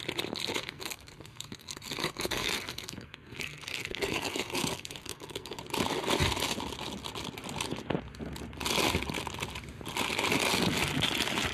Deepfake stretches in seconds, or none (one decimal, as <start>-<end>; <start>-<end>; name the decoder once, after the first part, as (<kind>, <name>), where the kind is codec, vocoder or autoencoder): 0.5-5.6 (codec, SNAC)